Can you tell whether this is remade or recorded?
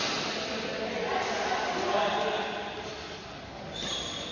recorded